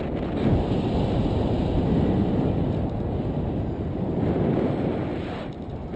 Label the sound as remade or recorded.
recorded